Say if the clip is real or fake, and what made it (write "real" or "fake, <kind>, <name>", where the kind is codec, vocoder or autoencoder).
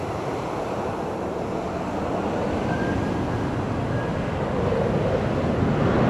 real